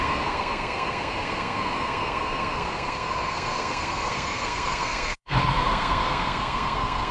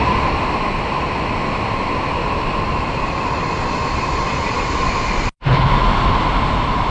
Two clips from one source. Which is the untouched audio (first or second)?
second